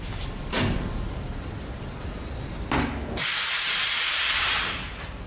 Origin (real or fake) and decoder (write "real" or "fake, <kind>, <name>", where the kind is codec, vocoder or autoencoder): real